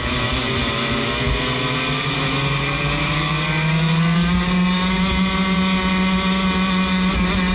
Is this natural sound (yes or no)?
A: yes